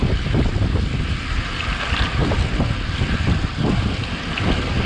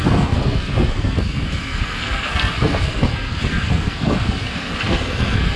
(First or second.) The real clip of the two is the first